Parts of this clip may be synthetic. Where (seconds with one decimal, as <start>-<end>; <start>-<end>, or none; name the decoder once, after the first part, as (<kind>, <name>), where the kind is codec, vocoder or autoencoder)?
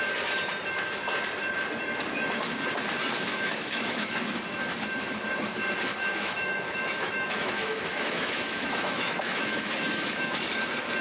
3.3-4.2 (autoencoder, DAC-VAE); 5.9-10.4